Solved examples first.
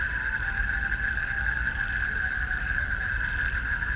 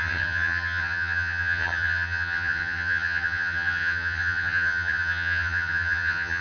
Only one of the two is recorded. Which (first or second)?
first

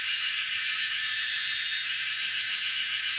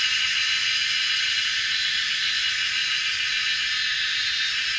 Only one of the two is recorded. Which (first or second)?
second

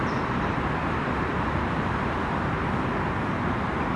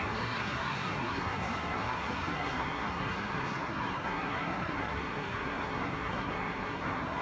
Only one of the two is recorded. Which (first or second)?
first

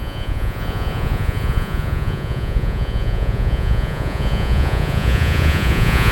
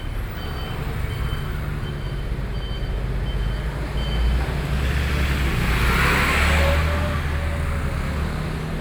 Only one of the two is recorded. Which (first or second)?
second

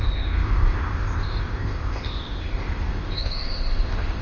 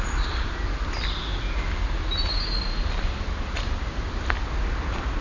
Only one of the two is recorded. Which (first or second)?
second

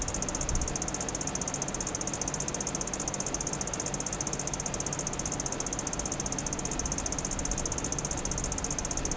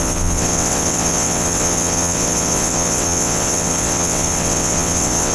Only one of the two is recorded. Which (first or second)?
first